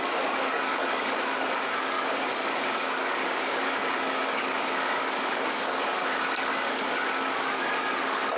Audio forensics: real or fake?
fake